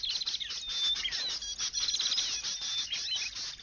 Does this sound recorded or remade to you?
recorded